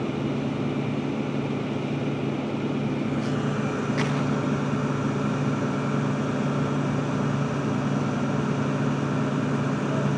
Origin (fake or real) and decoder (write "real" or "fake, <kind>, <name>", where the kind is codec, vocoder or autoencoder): real